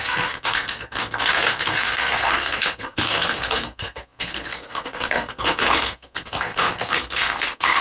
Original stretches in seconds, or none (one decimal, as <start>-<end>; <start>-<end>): none